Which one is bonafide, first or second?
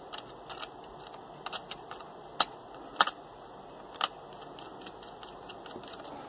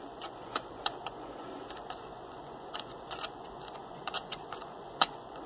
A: first